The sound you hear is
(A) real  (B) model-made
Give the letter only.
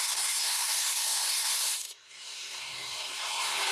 B